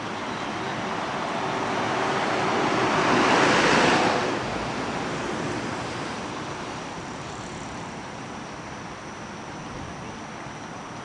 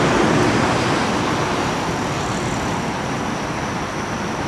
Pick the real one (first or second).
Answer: second